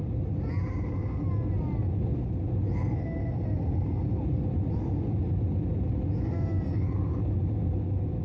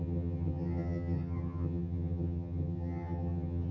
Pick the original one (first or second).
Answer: first